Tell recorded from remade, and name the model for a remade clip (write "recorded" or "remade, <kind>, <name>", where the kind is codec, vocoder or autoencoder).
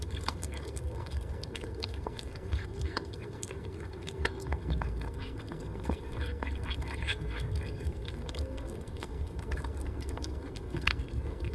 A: remade, codec, SNAC